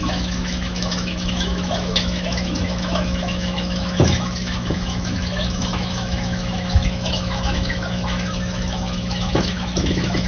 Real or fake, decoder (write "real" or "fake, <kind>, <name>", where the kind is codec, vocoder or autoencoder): fake, autoencoder, DAC-VAE